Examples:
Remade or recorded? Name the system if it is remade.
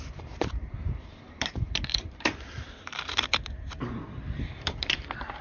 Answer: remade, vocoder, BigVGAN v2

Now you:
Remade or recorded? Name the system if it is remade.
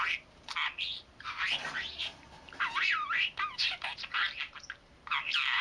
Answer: remade, vocoder, BigVGAN v2